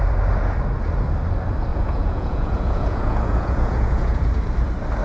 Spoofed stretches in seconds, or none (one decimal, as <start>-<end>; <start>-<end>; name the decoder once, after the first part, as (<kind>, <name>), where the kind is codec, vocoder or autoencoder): 1.7-4.4 (vocoder, Vocos)